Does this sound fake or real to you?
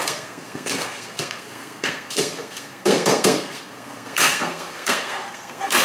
fake